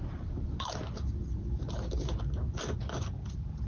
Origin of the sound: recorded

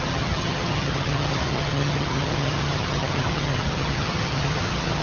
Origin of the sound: remade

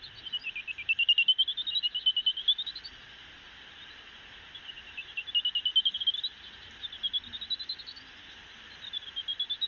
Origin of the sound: recorded